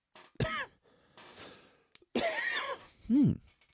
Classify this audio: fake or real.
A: real